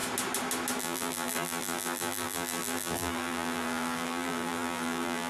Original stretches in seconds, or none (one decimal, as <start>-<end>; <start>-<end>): 0.0-0.8